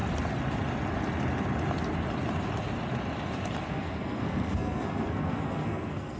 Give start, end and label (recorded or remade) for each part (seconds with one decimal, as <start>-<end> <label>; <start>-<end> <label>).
0.0-3.7 recorded; 3.7-6.2 remade